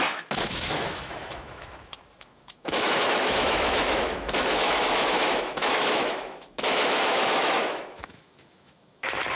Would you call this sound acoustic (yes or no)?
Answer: no